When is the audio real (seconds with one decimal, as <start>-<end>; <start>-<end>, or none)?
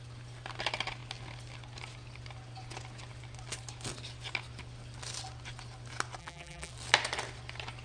0.0-6.2; 6.7-7.8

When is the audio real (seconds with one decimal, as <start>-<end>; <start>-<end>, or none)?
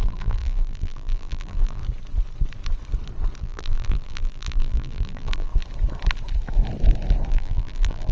1.8-3.4; 5.5-7.3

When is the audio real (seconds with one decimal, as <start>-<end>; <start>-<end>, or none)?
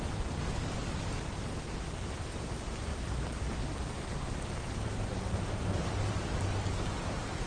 0.0-2.9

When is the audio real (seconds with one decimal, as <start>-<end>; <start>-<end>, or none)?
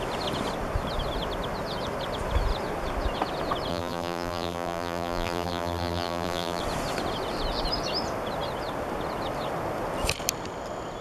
0.0-3.7; 6.6-11.0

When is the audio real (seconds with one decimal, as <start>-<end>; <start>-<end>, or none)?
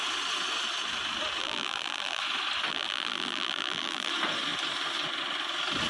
0.0-1.4; 2.2-2.7; 4.1-5.9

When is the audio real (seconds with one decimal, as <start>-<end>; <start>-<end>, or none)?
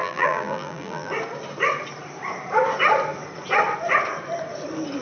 1.1-5.0